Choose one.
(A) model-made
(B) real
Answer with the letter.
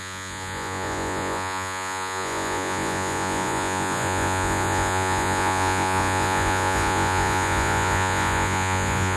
A